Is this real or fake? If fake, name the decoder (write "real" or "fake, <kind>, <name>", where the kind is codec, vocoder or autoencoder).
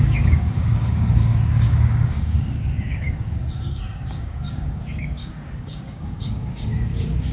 fake, codec, DAC